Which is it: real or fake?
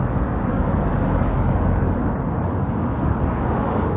fake